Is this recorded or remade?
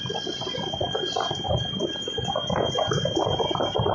recorded